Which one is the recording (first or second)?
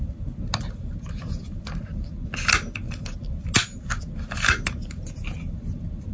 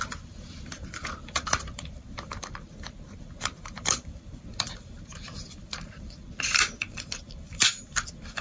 first